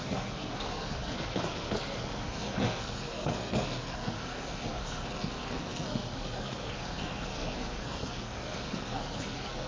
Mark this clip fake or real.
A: fake